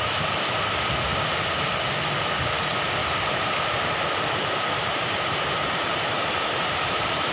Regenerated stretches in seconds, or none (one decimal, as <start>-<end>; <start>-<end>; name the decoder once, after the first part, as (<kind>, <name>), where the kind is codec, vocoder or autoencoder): 3.0-7.3 (vocoder, BigVGAN v2)